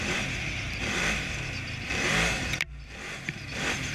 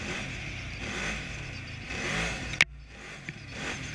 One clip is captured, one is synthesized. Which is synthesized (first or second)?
first